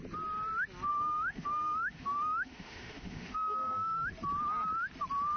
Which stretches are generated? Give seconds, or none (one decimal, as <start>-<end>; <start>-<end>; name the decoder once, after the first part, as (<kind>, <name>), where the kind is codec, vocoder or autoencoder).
0.9-4.1 (autoencoder, DAC-VAE)